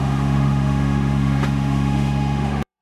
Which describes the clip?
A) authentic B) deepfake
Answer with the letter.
B